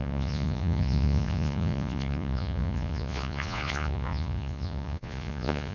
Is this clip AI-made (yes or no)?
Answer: yes